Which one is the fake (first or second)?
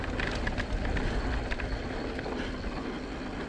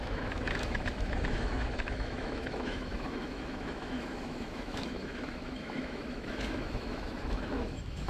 second